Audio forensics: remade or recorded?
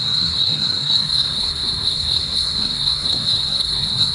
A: remade